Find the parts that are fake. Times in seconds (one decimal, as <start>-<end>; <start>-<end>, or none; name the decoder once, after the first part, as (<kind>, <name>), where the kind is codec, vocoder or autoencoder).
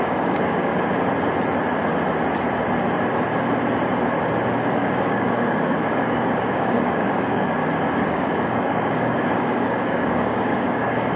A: 0.0-0.7 (codec, DAC); 4.7-7.6; 8.1-11.2